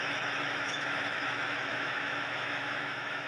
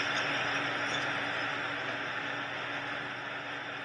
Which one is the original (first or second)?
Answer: second